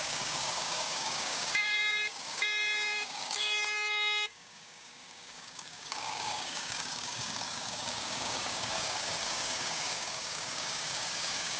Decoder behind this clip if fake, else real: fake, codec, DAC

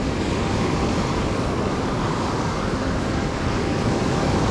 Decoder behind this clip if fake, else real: fake, codec, DAC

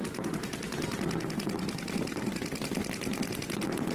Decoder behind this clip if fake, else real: real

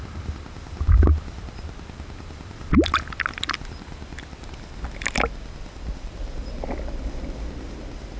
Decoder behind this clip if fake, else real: real